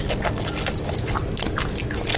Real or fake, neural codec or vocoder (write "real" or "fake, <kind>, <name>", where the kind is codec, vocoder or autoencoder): real